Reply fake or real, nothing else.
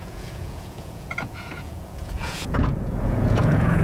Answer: fake